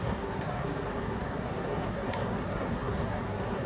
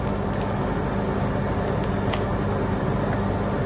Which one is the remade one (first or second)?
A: first